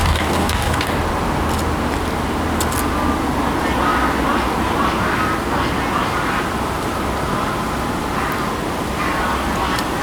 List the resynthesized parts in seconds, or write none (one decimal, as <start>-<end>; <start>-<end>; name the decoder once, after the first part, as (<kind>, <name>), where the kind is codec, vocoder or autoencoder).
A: 0.0-1.0 (codec, DAC)